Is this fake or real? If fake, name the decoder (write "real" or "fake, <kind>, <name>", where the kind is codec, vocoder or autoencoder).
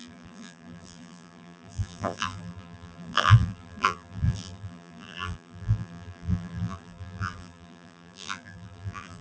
fake, vocoder, BigVGAN v2